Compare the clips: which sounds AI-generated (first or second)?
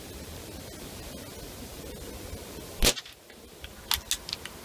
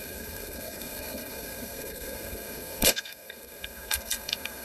second